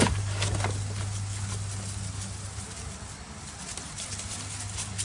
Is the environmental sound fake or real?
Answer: real